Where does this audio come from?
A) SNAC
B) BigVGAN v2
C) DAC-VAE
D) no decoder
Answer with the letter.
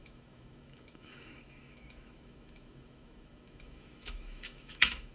C